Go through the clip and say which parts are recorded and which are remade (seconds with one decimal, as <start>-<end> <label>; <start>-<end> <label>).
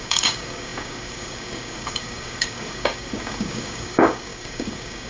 0.0-5.1 remade